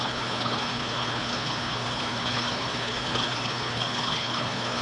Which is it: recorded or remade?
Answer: remade